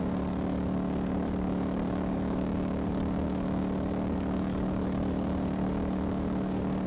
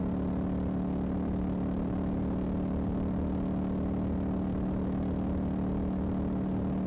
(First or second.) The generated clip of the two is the first